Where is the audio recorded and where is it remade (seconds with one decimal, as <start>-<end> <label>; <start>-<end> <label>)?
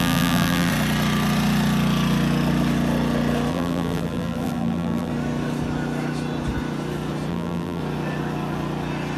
0.0-0.7 remade; 0.7-3.5 recorded; 3.5-5.1 remade; 5.1-7.3 recorded; 7.3-7.8 remade; 7.8-9.2 recorded